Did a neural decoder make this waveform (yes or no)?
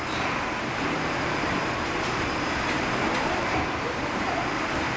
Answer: yes